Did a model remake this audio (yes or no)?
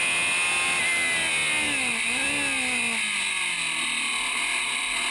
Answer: no